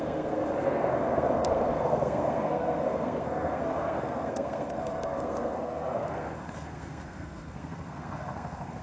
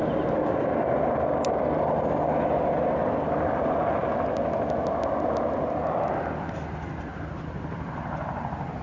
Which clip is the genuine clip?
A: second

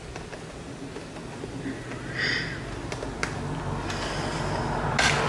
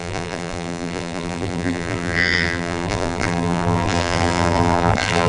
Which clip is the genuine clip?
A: first